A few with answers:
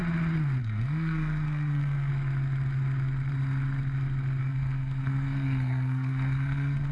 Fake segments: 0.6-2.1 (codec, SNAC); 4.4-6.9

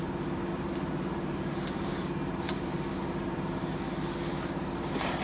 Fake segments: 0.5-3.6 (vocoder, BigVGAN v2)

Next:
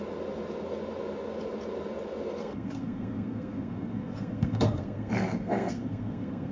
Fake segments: 2.4-6.5 (codec, SNAC)

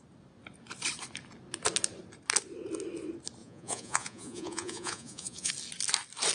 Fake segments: 3.4-5.5 (vocoder, Vocos)